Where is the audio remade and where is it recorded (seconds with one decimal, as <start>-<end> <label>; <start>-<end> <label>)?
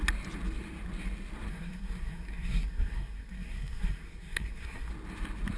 0.0-1.5 recorded; 1.5-4.9 remade; 4.9-5.6 recorded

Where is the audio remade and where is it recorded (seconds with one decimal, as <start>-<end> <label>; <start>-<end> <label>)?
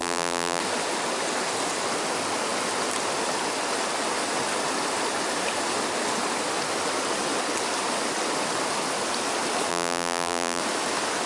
0.0-0.6 remade; 0.6-9.7 recorded; 9.7-10.6 remade; 10.6-11.3 recorded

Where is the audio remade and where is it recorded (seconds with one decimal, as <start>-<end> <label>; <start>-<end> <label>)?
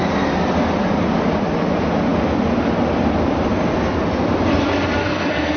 0.0-5.0 recorded; 5.0-5.6 remade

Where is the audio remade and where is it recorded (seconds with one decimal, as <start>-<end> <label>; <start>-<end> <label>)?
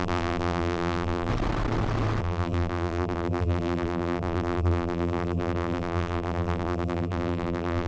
0.0-1.3 remade; 1.3-2.2 recorded; 2.2-7.9 remade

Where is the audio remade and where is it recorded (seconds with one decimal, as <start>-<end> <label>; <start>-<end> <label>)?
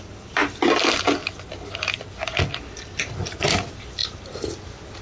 0.0-5.0 recorded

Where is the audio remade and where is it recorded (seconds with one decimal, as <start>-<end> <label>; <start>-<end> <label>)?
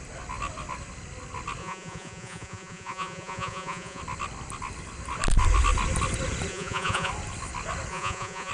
0.0-1.6 recorded; 1.6-4.0 remade; 4.0-6.5 recorded; 6.5-7.1 remade; 7.1-7.9 recorded; 7.9-8.5 remade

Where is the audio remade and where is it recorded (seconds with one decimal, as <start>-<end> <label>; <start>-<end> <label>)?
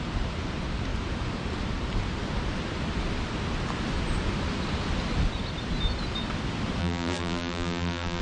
0.0-6.8 recorded; 6.8-8.2 remade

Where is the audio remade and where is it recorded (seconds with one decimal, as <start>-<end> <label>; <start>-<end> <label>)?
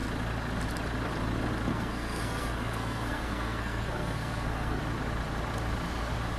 0.0-1.7 recorded; 1.7-4.8 remade; 4.8-6.4 recorded